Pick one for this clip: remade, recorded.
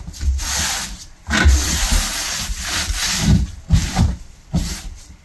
remade